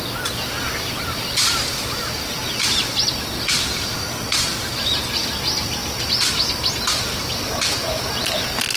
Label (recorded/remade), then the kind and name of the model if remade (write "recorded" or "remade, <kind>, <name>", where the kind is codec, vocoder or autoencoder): recorded